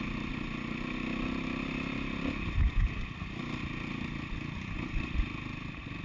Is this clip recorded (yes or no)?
yes